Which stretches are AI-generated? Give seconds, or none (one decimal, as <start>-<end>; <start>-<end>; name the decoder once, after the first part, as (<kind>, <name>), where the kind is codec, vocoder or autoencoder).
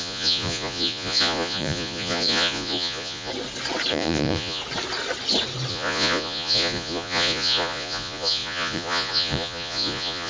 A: 0.0-3.3 (vocoder, Vocos); 3.9-4.6; 5.7-10.3